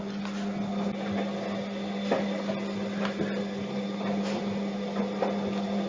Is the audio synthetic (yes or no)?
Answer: no